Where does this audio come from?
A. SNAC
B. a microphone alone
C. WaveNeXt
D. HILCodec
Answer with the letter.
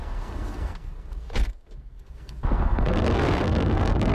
A